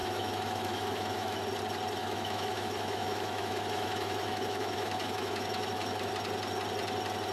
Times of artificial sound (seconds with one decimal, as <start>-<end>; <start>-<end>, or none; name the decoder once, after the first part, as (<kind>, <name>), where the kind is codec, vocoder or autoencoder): 0.0-1.4 (autoencoder, DAC-VAE); 2.0-6.1